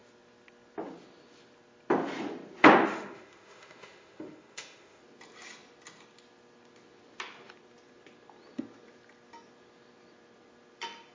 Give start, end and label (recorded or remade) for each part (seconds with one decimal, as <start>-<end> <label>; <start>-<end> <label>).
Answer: 0.0-2.9 recorded; 2.9-5.0 remade; 5.0-11.1 recorded